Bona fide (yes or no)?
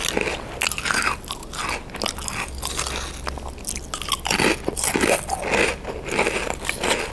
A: yes